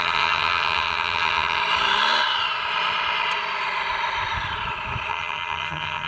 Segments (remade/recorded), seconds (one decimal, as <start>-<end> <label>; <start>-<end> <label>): 0.0-1.6 remade; 1.6-5.1 recorded; 5.1-6.1 remade